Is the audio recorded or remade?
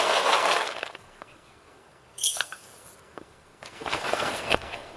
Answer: remade